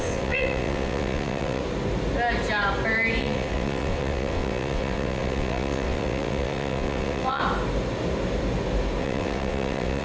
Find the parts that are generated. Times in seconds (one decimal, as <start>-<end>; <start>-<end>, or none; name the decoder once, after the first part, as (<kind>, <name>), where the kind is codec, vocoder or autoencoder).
0.0-1.6 (vocoder, WaveNeXt); 3.2-7.4; 9.0-10.0